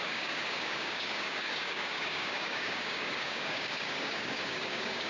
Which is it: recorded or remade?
remade